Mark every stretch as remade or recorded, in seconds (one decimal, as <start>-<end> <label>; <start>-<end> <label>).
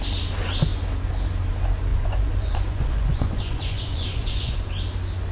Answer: 0.0-1.9 recorded; 1.9-4.7 remade; 4.7-5.3 recorded